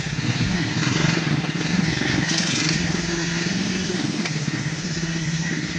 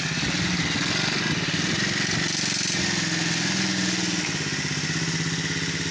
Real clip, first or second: second